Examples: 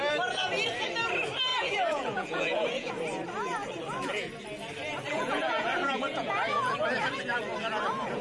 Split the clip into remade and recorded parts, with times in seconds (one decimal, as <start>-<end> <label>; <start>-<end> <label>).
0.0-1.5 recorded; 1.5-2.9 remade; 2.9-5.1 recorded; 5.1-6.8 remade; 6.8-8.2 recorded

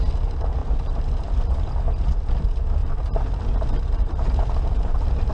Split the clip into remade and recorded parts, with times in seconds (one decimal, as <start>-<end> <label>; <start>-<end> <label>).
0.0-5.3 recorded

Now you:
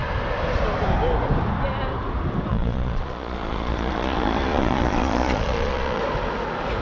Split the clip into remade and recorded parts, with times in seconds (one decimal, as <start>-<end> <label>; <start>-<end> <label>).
0.0-2.5 recorded; 2.5-6.0 remade; 6.0-6.8 recorded

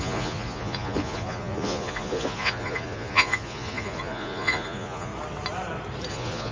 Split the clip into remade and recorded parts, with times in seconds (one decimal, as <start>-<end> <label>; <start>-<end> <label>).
0.0-5.1 remade; 5.1-6.1 recorded; 6.1-6.5 remade

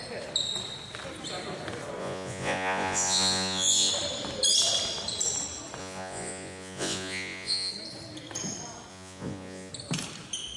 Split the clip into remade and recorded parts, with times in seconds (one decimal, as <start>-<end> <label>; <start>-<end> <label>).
0.0-2.0 recorded; 2.0-3.9 remade; 3.9-5.8 recorded; 5.8-7.7 remade; 7.7-8.9 recorded; 8.9-9.7 remade; 9.7-10.6 recorded

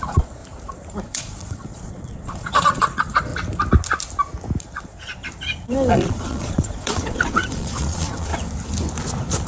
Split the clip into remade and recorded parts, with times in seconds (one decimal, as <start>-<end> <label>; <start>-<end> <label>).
0.0-0.4 remade; 0.4-1.0 recorded; 1.0-3.3 remade; 3.3-4.6 recorded; 4.6-5.2 remade; 5.2-5.9 recorded; 5.9-8.3 remade; 8.3-9.5 recorded

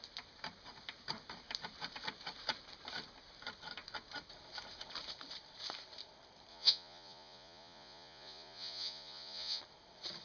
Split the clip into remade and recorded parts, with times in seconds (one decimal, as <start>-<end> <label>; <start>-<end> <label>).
0.0-6.5 recorded; 6.5-9.6 remade; 9.6-10.2 recorded

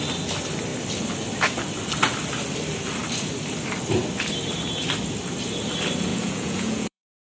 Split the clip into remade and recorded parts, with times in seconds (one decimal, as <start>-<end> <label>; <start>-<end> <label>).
0.0-6.1 recorded; 6.1-7.4 remade